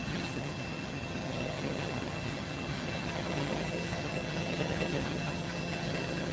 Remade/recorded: remade